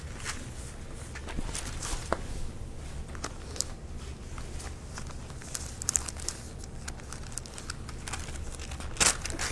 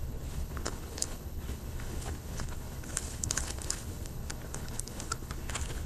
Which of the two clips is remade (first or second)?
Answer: second